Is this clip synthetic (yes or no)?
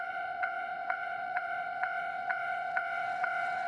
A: yes